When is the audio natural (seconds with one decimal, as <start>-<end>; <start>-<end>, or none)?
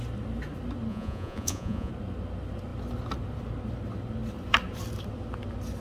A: 0.0-0.9; 1.9-5.8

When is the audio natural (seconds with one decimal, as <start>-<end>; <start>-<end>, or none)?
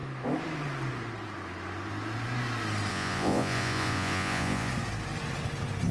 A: 0.0-2.9; 4.7-5.9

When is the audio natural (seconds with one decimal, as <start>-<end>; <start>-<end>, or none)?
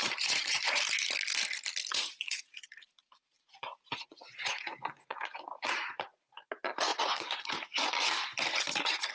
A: 0.8-1.9; 6.2-6.9; 7.5-9.1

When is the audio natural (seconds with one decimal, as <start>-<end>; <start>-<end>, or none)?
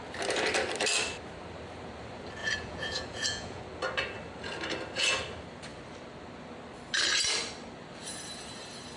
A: 0.0-2.4; 3.6-9.0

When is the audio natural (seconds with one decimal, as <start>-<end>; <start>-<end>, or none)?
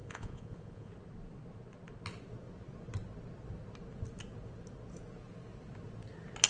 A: 0.9-6.5